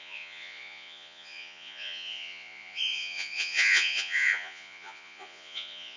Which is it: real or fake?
fake